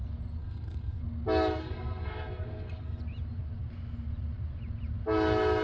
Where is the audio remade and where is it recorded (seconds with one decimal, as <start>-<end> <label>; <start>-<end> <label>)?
0.0-0.4 recorded; 0.4-1.0 remade; 1.0-1.6 recorded; 1.6-3.0 remade; 3.0-5.6 recorded